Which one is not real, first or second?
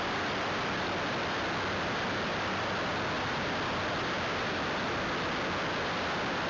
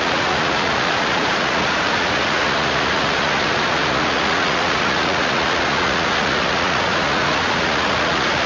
second